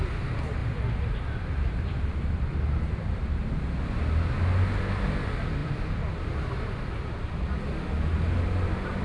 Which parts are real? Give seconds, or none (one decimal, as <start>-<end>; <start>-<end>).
0.0-0.6; 3.8-5.6; 6.2-9.0